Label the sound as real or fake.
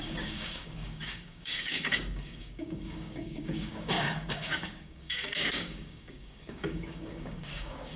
fake